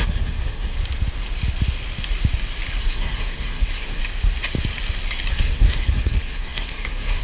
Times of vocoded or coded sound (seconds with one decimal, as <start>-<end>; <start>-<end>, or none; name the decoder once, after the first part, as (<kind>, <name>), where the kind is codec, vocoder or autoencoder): 0.0-0.8 (codec, SNAC); 2.8-4.0; 5.3-7.2